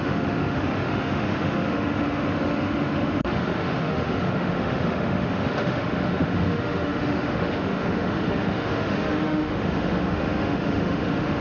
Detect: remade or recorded remade